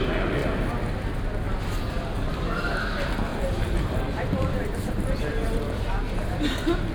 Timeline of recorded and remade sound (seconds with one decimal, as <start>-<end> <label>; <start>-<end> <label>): 0.0-3.3 recorded; 3.3-5.3 remade; 5.3-6.9 recorded